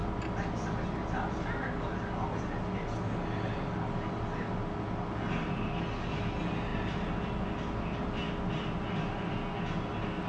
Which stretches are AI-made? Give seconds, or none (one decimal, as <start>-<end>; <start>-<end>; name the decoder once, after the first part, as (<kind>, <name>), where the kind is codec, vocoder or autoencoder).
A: none